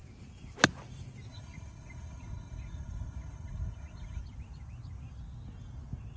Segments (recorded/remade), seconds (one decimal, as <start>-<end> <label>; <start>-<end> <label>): 0.0-1.3 recorded; 1.3-4.2 remade; 4.2-6.2 recorded